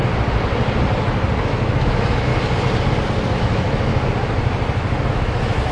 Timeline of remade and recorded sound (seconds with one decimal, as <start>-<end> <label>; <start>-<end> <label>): 0.0-1.4 recorded; 1.4-2.3 remade; 2.3-3.4 recorded; 3.4-3.9 remade; 3.9-5.1 recorded; 5.1-5.7 remade